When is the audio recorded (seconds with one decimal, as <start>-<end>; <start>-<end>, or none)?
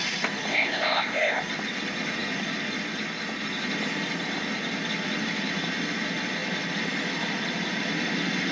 0.0-0.5; 1.4-8.5